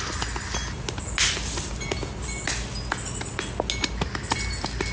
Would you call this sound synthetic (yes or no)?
no